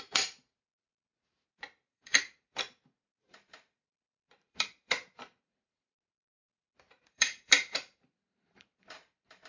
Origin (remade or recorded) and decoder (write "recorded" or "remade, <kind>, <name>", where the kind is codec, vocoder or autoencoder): remade, vocoder, BigVGAN v2